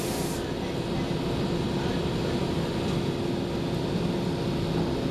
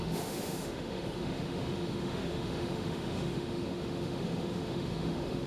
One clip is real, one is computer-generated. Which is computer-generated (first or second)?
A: second